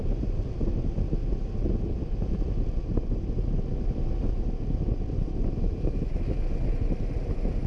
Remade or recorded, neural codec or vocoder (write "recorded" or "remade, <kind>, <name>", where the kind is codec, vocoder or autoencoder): recorded